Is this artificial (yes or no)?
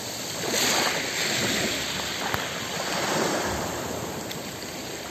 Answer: no